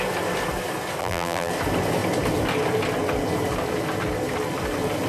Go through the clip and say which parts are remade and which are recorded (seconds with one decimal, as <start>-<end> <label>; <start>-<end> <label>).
0.0-1.0 recorded; 1.0-1.5 remade; 1.5-5.1 recorded